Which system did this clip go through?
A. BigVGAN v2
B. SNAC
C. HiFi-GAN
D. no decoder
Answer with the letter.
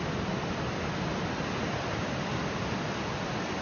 D